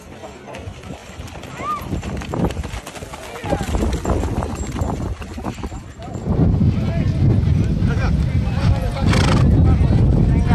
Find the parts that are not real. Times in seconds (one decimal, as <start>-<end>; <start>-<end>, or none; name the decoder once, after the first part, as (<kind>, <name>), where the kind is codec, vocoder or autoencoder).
none